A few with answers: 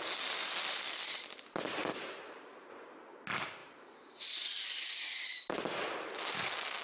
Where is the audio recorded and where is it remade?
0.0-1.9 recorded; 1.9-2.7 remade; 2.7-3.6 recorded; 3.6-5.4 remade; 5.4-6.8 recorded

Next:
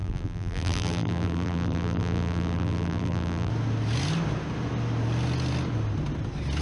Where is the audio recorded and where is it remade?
0.0-3.5 remade; 3.5-6.6 recorded